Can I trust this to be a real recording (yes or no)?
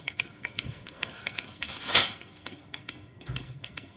no